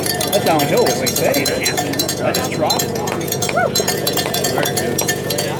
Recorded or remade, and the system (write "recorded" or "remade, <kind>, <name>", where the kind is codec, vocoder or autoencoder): remade, vocoder, Vocos